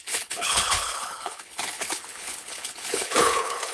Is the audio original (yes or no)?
no